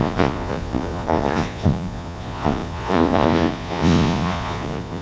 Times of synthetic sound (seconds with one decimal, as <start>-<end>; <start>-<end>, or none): 0.0-5.0

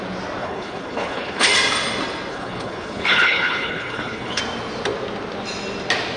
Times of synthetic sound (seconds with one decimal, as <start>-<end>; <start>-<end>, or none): 0.4-1.5; 2.3-4.4

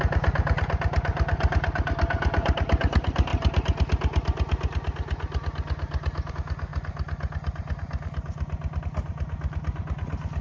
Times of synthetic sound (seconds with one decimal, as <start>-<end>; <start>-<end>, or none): none

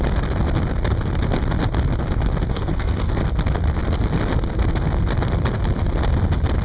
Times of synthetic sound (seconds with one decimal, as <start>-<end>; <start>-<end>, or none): 2.5-3.2

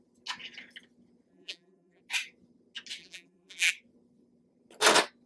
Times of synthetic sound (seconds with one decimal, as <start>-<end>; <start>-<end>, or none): 1.3-2.0; 3.0-3.7

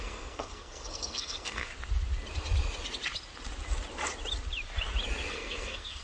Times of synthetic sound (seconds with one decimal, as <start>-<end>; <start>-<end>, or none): 0.0-1.7; 5.3-6.0

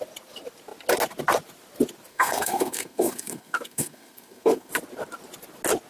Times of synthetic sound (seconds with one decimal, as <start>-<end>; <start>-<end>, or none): 2.1-4.7